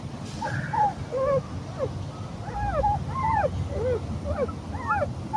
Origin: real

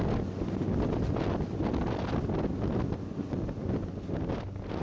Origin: real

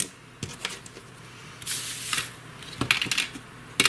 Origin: real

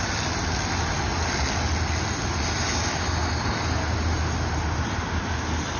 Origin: real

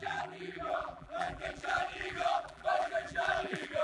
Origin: fake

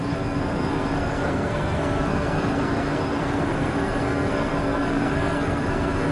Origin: fake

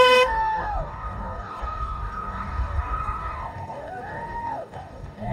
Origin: fake